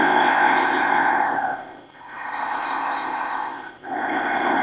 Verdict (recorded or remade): remade